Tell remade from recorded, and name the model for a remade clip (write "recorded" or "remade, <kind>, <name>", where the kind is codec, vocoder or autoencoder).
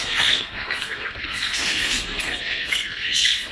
remade, codec, SNAC